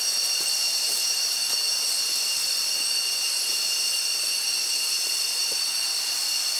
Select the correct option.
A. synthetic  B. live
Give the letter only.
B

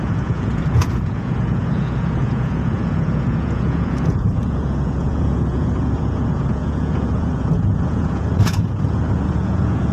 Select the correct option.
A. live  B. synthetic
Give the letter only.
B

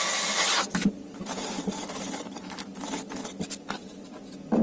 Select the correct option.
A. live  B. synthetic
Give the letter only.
A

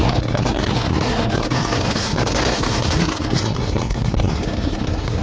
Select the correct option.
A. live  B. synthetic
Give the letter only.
B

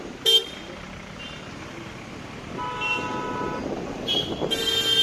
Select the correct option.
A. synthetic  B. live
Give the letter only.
B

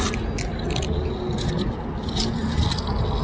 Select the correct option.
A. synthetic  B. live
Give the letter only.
B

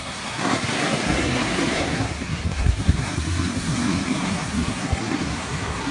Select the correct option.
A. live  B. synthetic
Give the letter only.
B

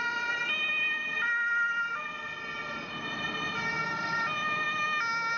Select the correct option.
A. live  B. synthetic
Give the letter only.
A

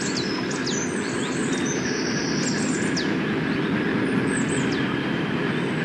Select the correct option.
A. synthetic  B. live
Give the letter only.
B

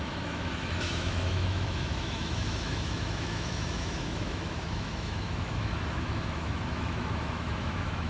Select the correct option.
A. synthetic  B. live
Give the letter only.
A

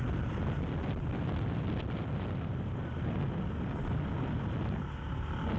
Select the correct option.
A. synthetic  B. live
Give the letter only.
B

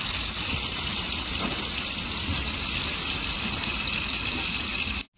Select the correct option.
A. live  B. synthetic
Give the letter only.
A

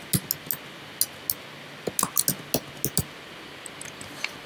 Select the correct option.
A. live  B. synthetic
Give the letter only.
A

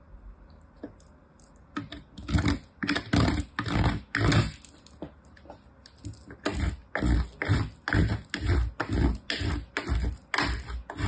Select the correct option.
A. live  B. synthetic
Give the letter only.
A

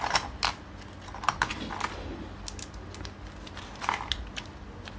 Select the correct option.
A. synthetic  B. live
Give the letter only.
B